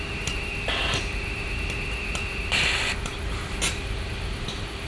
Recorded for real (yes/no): yes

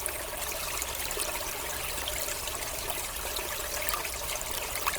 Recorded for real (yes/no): yes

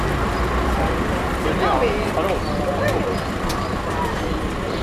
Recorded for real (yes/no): yes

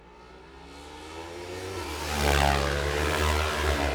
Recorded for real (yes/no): yes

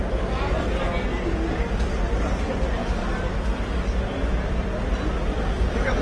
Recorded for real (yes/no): yes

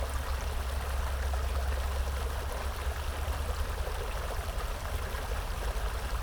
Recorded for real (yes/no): yes